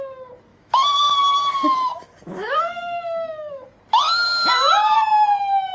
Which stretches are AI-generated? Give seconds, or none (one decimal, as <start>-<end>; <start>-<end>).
0.5-1.2; 1.9-3.7